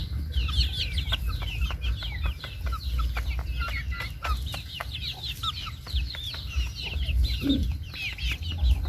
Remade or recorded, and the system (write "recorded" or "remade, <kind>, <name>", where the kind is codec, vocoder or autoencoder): recorded